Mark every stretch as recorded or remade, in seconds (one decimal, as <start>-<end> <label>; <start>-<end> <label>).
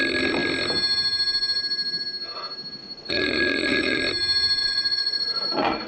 0.0-2.8 recorded; 2.8-4.0 remade; 4.0-4.6 recorded; 4.6-5.9 remade